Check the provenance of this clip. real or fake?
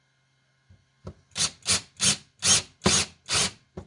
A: real